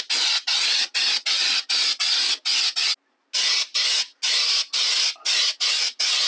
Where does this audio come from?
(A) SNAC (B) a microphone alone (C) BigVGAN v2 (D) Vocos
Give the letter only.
B